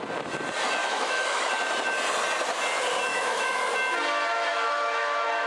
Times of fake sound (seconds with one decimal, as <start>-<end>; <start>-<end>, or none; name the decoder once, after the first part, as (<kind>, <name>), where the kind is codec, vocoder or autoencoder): 0.8-1.5 (autoencoder, DAC-VAE); 3.1-3.7; 4.5-5.5